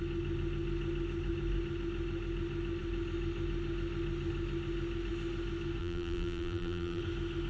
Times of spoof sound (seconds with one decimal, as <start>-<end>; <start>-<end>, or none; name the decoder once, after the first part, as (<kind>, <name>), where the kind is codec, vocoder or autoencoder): 5.8-7.0 (vocoder, BigVGAN v2)

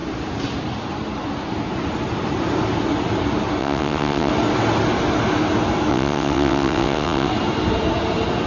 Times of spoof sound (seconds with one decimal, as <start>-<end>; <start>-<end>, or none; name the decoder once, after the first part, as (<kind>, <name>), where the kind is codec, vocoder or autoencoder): 3.6-4.3 (vocoder, WaveNeXt); 5.9-7.3

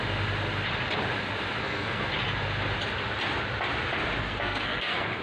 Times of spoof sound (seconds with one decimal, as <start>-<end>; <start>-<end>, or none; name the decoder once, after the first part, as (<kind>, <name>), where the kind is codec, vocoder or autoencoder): 1.6-2.1 (codec, SNAC); 4.2-5.2

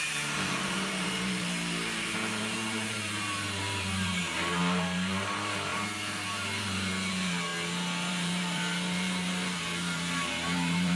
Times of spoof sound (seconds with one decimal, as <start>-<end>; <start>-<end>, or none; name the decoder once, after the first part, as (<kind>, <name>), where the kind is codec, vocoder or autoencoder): 0.0-7.5 (vocoder, BigVGAN v2); 8.1-11.0

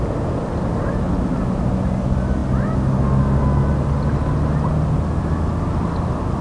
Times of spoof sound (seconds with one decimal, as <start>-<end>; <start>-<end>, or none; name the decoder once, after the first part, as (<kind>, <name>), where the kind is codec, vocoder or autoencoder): none

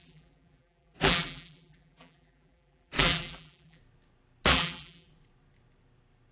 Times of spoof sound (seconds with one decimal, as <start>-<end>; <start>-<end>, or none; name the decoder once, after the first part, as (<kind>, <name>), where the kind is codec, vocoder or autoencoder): 0.0-3.8 (vocoder, BigVGAN v2); 4.5-5.1